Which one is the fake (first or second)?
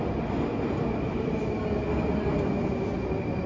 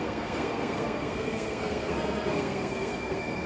second